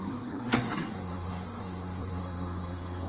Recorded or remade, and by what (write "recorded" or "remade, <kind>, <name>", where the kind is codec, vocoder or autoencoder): remade, codec, SNAC